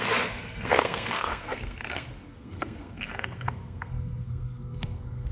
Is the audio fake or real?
fake